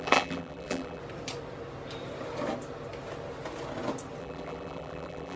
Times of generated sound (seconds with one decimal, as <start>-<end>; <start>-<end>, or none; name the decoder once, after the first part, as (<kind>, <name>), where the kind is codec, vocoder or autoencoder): 0.0-1.0 (vocoder, BigVGAN v2); 4.2-5.4